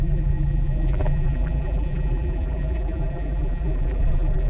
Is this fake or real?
fake